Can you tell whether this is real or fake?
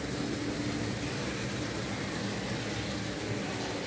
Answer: real